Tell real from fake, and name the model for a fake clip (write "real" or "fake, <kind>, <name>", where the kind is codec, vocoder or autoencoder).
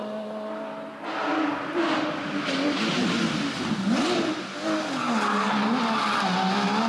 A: real